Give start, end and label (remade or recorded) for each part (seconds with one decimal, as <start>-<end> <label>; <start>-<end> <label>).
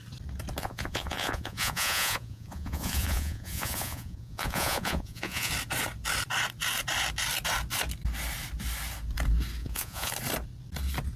0.0-0.6 recorded; 0.6-5.5 remade; 5.5-9.6 recorded; 9.6-10.1 remade; 10.1-11.2 recorded